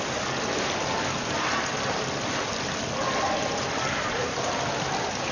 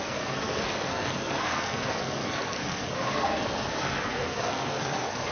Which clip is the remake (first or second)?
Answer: second